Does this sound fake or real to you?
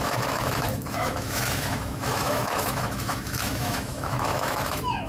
fake